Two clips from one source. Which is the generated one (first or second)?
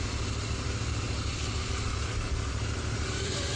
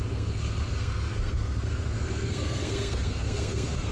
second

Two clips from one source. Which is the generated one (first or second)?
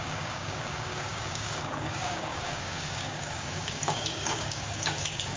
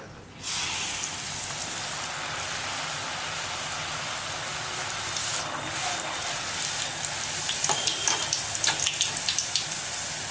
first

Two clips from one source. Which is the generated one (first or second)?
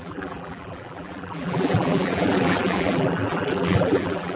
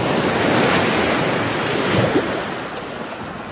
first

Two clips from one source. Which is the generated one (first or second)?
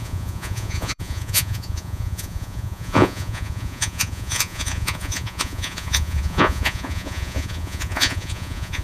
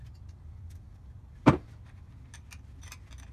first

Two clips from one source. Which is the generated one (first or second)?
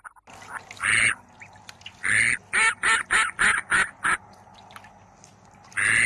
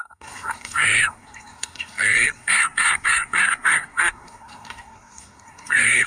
second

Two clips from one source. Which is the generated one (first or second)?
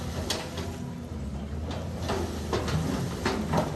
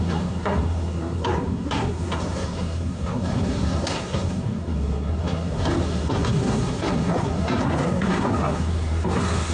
second